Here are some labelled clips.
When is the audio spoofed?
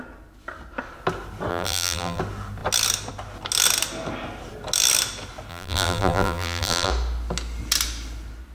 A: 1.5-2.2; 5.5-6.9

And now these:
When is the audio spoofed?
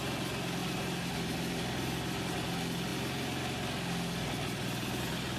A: 0.6-1.5